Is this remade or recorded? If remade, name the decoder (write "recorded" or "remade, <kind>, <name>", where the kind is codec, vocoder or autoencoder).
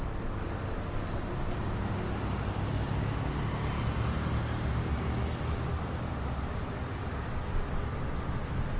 recorded